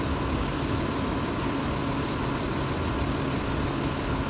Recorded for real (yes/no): yes